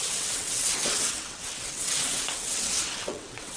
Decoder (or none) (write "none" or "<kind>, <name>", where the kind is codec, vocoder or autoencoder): vocoder, WaveNeXt